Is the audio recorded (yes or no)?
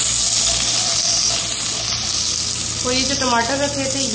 yes